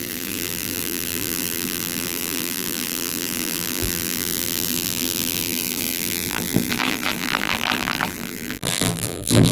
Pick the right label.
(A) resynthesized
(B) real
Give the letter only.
A